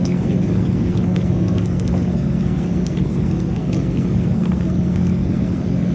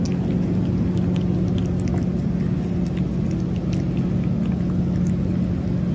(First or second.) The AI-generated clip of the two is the first